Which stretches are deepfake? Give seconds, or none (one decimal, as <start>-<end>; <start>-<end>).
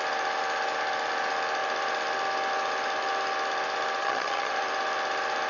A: 4.0-4.5